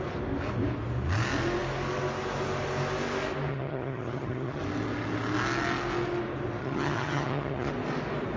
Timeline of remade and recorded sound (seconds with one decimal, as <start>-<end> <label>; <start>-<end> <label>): 0.0-3.5 recorded; 3.5-4.6 remade; 4.6-6.6 recorded; 6.6-7.7 remade; 7.7-8.4 recorded